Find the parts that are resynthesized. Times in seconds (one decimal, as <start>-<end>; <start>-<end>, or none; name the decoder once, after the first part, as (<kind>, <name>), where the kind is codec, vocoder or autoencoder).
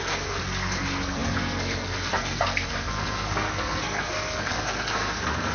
0.0-5.5 (codec, SNAC)